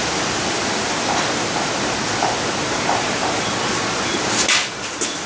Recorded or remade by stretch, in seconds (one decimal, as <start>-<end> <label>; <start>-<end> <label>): 0.0-5.3 recorded